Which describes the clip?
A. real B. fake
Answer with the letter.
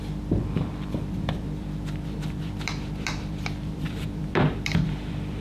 B